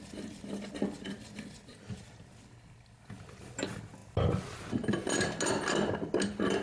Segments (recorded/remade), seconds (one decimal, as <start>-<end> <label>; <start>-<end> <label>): 0.0-6.6 recorded